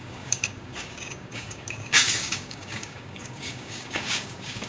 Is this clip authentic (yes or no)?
no